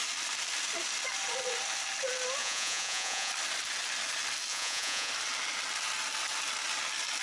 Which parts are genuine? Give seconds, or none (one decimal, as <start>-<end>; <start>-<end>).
0.0-2.4; 3.3-4.5; 5.1-7.2